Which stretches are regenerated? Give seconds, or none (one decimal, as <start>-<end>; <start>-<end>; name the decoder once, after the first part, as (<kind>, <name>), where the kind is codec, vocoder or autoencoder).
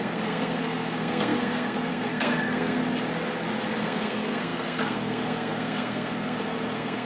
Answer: 0.0-2.8 (codec, SNAC); 3.8-7.1